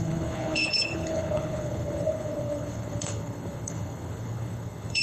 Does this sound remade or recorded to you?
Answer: remade